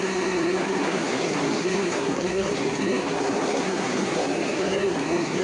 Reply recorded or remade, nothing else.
remade